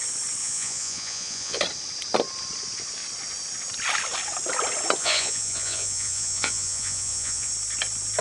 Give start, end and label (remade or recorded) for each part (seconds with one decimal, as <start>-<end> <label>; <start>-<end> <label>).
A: 0.0-0.4 recorded; 0.4-1.6 remade; 1.6-5.0 recorded; 5.0-7.5 remade; 7.5-8.2 recorded